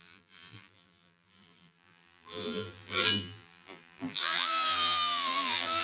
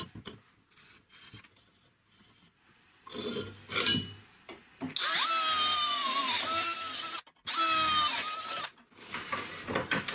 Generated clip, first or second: first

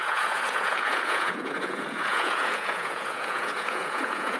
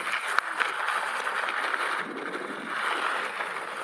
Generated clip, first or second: first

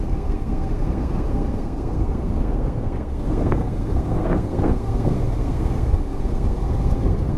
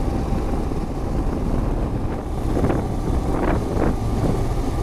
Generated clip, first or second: first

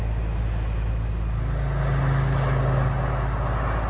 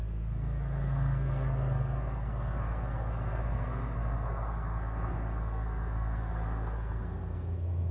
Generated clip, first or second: second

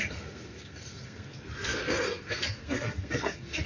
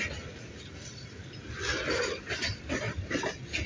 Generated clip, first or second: first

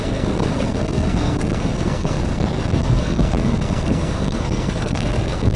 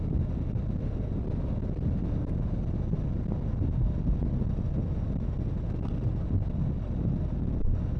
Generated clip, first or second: first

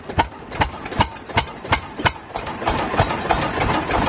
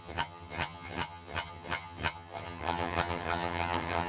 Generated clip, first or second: second